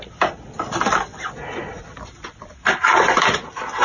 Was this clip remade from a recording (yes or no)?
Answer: no